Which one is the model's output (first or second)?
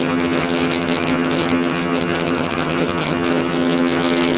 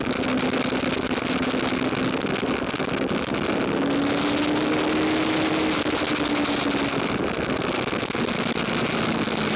first